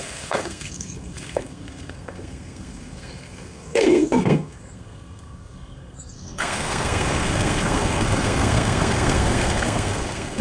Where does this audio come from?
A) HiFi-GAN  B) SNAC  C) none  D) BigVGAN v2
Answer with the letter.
B